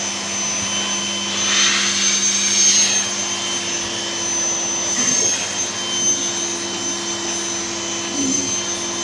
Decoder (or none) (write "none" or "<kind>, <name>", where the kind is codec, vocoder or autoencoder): none